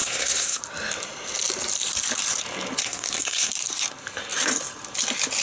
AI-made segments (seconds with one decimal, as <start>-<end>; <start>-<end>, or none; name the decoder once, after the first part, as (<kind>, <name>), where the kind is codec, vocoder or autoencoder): 0.0-0.6 (codec, SNAC); 2.8-3.5